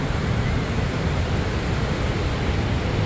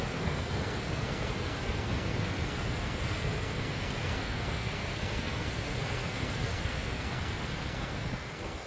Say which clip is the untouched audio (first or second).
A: first